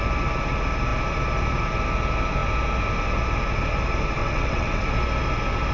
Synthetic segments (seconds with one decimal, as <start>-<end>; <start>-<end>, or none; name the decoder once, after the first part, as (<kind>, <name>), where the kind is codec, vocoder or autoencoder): 4.2-4.9 (vocoder, WaveNeXt)